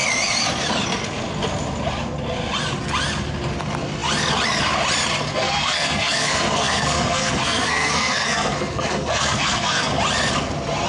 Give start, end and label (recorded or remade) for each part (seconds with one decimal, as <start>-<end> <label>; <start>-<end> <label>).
0.0-5.3 recorded; 5.3-9.9 remade; 9.9-10.9 recorded